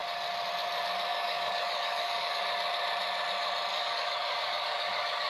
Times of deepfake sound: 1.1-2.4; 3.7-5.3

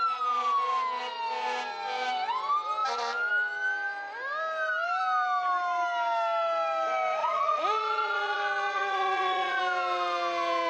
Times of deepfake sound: 7.2-9.6

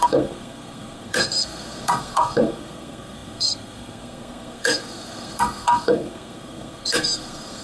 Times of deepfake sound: 0.0-7.6

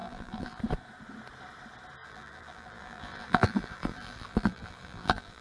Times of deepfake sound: 0.0-0.6; 2.0-5.4

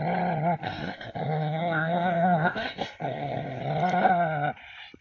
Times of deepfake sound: 0.6-3.6

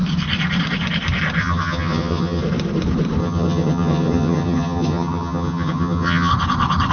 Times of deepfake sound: 1.4-2.4; 3.2-6.3